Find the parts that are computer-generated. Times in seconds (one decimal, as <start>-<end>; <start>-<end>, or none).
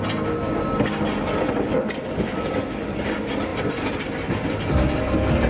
none